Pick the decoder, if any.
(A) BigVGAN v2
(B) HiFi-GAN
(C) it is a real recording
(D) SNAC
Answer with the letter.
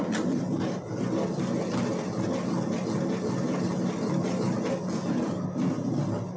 C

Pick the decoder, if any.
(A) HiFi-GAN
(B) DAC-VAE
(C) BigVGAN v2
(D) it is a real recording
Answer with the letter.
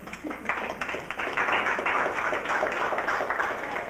B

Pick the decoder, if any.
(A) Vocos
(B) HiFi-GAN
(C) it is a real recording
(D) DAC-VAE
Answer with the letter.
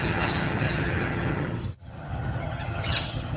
B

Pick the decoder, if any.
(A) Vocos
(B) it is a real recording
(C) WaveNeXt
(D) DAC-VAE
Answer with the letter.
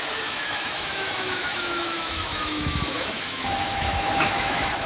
D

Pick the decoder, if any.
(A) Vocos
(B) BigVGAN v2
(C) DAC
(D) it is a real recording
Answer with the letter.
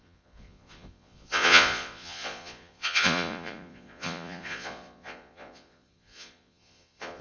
A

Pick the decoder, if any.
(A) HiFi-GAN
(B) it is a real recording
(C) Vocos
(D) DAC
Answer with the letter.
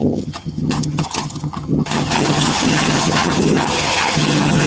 A